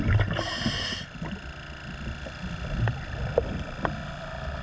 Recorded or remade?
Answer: recorded